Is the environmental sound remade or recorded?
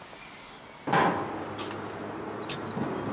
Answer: recorded